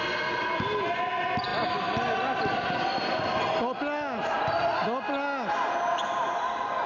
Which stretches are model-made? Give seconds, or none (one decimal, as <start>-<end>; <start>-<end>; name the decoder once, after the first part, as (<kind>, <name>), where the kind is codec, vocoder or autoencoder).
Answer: none